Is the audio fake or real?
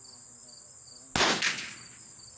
real